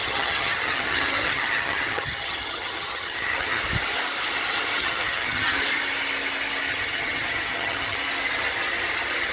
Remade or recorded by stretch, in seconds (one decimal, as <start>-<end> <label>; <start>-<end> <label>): 0.0-3.6 remade; 3.6-4.8 recorded; 4.8-5.6 remade; 5.6-6.7 recorded; 6.7-8.0 remade; 8.0-9.3 recorded